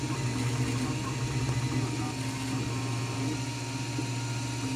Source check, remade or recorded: recorded